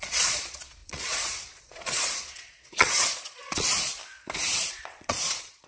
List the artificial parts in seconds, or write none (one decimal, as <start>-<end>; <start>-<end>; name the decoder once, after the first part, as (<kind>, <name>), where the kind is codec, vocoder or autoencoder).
0.0-4.0 (vocoder, Vocos); 4.7-5.7